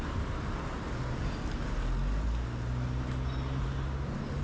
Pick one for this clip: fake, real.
real